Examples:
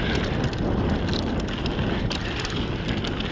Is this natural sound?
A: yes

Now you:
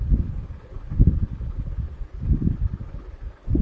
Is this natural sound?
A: yes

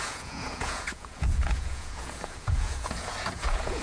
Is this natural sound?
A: no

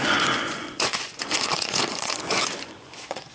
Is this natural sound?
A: no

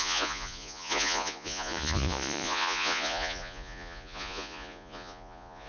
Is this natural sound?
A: no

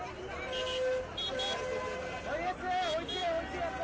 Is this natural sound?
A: yes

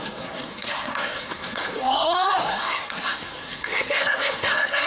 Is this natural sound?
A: no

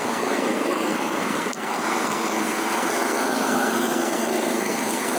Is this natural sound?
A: no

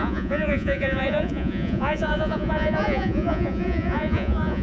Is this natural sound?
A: no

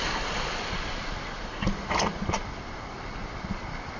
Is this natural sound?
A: yes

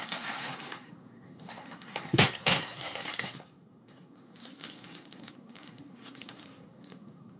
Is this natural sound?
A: no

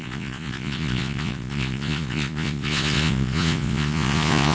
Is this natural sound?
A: no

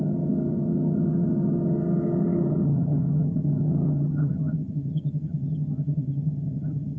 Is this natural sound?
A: no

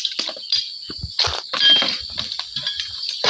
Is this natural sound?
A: yes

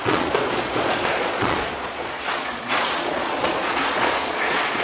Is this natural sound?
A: no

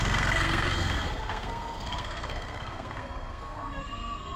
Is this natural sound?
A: no